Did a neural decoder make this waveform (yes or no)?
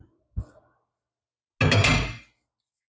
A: no